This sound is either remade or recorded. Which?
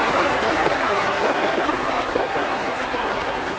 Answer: remade